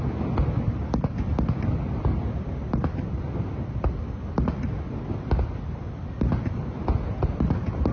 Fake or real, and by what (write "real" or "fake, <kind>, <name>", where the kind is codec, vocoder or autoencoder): real